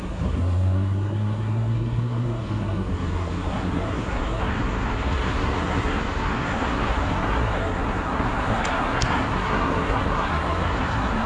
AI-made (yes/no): yes